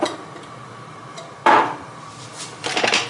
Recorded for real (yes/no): no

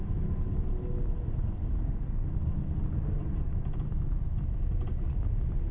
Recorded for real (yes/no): yes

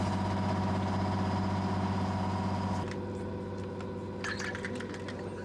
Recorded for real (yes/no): yes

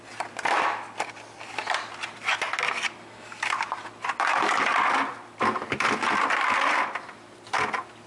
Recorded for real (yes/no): yes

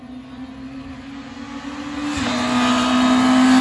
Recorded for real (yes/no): yes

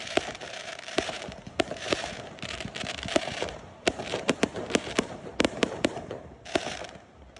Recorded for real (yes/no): no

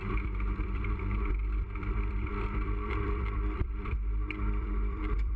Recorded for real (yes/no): no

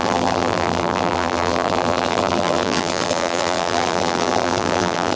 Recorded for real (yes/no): no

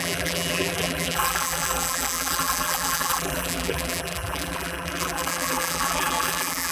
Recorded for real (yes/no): no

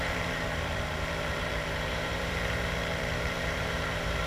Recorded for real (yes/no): no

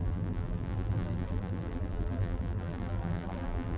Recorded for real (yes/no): no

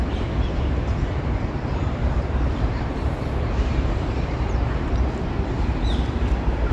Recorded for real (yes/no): no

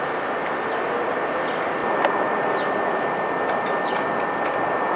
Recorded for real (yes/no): yes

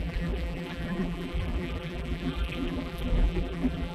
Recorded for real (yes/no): no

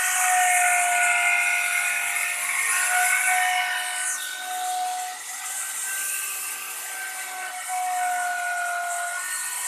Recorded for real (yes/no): yes